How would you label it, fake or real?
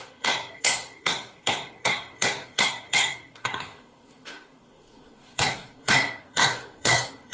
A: fake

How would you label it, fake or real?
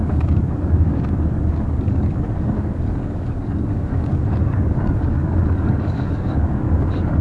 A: fake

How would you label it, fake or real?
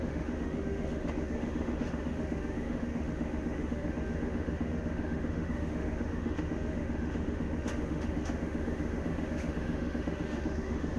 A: fake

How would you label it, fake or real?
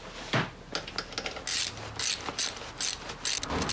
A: real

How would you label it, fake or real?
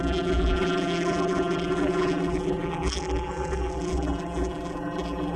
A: fake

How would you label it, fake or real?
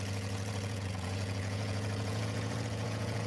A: fake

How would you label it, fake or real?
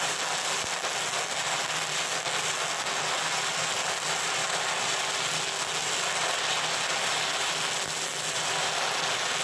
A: real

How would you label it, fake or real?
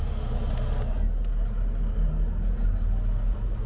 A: real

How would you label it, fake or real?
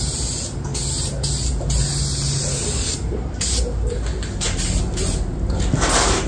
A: real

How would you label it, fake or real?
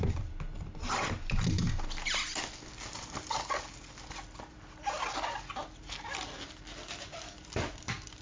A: real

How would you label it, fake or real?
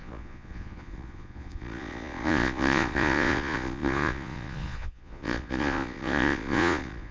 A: fake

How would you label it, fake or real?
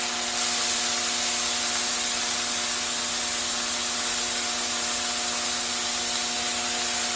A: real